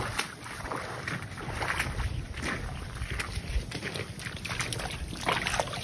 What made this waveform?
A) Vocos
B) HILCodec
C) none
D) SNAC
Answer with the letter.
C